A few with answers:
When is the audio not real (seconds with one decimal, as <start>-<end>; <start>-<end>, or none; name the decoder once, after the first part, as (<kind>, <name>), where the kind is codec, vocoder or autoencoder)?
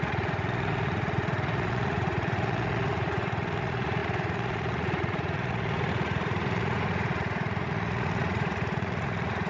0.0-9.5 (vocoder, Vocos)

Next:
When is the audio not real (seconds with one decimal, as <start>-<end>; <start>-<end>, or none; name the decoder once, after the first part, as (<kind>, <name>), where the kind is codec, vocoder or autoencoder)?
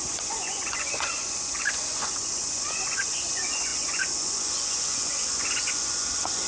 0.0-6.5 (vocoder, Vocos)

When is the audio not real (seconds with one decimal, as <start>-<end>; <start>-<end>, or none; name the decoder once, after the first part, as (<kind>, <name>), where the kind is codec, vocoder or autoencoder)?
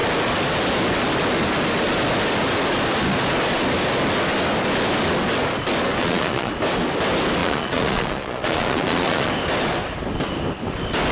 6.0-6.5 (vocoder, Vocos); 7.4-9.3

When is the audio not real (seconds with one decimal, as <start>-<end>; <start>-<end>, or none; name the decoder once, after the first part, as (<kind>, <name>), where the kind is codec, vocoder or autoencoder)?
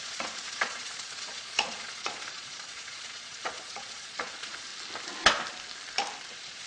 0.0-4.7 (vocoder, Vocos); 6.3-6.7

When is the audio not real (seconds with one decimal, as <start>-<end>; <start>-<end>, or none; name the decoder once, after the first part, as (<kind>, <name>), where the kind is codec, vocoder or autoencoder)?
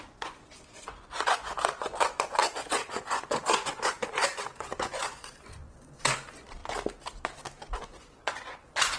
0.0-6.6 (vocoder, Vocos); 7.8-9.0